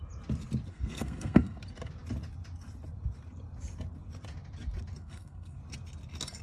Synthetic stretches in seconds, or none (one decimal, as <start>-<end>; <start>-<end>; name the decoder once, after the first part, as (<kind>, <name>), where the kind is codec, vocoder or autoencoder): 0.7-1.6 (codec, SNAC); 5.0-5.6